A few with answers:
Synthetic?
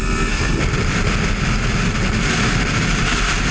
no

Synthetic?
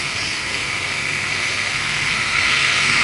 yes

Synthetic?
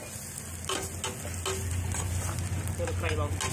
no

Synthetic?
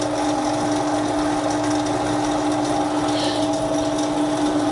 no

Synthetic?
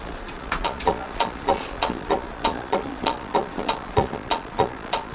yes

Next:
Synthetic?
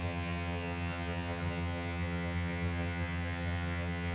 yes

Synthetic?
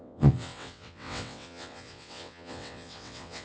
yes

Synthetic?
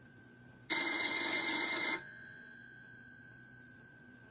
yes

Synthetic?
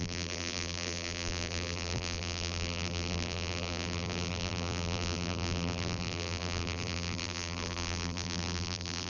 yes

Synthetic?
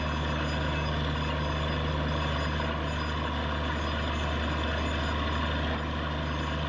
no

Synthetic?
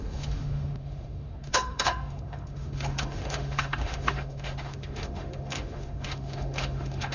yes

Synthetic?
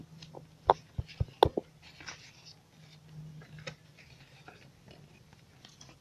no